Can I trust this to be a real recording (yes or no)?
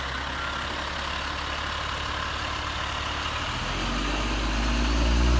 yes